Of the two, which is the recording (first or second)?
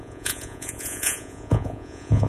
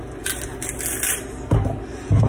second